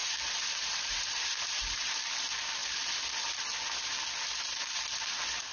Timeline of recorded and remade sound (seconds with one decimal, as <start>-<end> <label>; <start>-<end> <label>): 0.0-2.0 remade; 2.0-5.5 recorded